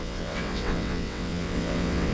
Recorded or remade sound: remade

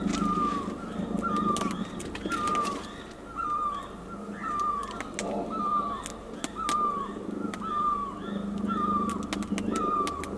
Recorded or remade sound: recorded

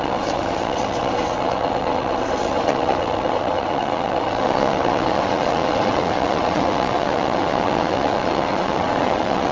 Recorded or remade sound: remade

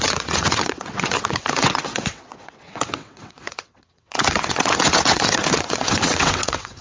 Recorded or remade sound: remade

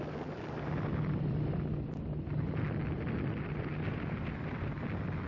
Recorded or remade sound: recorded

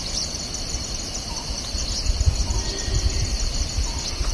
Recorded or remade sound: recorded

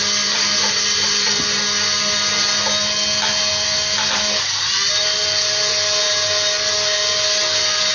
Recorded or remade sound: recorded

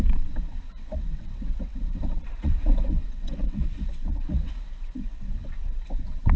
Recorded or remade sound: remade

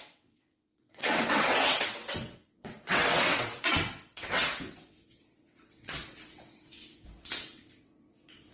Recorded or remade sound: remade